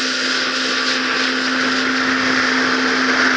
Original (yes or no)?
yes